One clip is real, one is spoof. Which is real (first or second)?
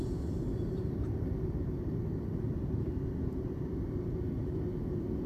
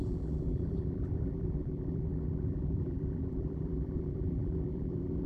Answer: first